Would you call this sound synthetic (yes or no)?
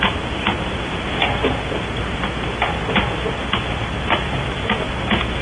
no